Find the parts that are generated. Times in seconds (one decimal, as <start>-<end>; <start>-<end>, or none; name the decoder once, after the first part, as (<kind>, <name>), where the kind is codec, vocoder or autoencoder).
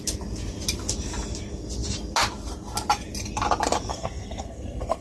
3.9-5.0 (codec, SNAC)